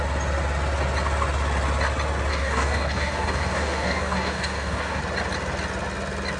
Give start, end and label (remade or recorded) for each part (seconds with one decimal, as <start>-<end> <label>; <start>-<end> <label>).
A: 0.0-2.3 recorded; 2.3-5.0 remade; 5.0-6.4 recorded